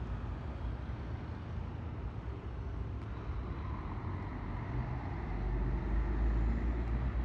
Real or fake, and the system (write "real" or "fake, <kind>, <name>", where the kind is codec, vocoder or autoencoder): real